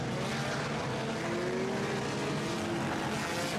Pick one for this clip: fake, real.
real